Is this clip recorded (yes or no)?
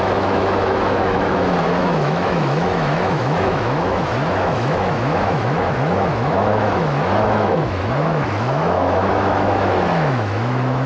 no